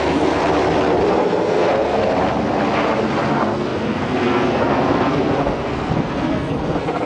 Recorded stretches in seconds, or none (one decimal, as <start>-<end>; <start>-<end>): 0.4-1.1; 2.0-3.3